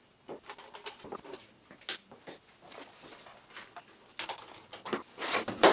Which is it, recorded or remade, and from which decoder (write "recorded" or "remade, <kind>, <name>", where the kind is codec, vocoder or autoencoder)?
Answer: recorded